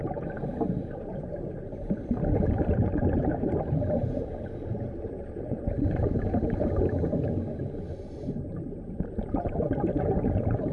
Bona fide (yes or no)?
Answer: no